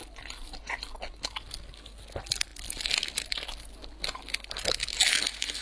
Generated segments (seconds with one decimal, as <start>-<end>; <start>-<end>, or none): none